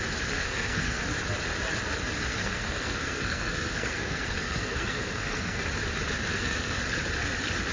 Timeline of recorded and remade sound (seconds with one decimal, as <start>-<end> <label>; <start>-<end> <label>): 0.0-0.4 recorded; 0.4-1.0 remade; 1.0-2.3 recorded; 2.3-5.6 remade; 5.6-6.3 recorded; 6.3-6.8 remade; 6.8-7.7 recorded